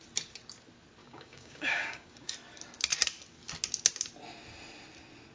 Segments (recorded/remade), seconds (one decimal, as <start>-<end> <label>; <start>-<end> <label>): 0.0-1.0 recorded; 1.0-2.3 remade; 2.3-5.3 recorded